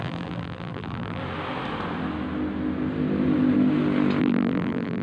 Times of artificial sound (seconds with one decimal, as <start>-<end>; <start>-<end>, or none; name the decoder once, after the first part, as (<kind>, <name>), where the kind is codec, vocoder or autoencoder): 0.0-1.2 (vocoder, BigVGAN v2); 4.2-5.0